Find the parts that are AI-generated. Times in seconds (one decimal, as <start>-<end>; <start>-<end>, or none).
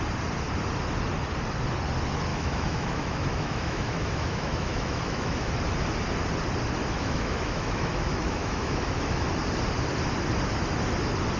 2.3-5.5; 6.8-9.3